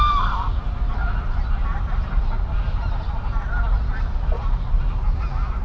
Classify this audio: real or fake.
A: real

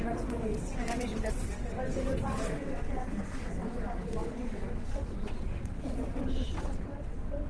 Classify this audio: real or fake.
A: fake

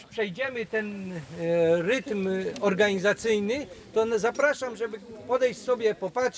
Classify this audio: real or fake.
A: real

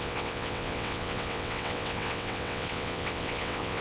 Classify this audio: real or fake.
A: fake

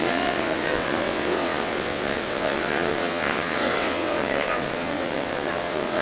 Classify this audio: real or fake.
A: fake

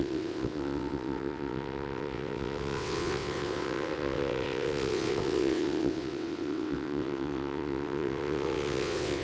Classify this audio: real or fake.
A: fake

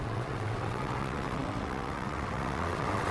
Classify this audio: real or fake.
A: fake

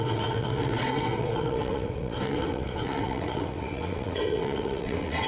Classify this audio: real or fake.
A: fake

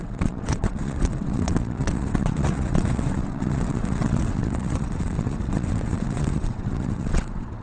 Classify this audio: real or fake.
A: fake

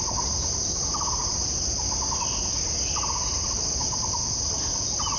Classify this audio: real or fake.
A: real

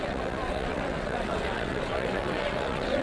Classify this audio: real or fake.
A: fake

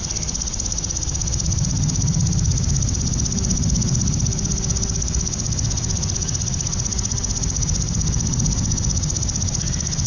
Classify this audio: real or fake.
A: real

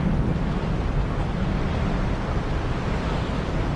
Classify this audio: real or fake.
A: real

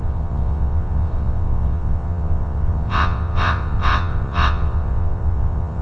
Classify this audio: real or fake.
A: fake